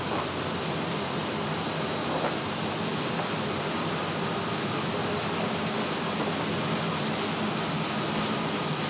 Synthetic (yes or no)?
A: no